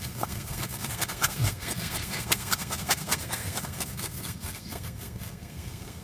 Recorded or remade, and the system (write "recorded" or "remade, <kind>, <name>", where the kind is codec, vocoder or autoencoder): remade, codec, SNAC